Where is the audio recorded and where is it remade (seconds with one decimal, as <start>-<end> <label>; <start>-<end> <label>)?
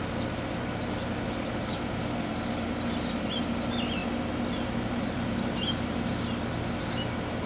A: 0.0-7.5 recorded